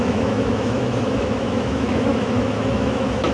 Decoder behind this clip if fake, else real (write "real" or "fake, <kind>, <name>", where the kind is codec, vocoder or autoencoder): fake, autoencoder, DAC-VAE